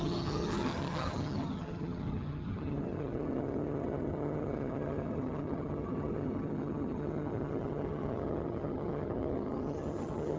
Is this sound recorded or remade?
remade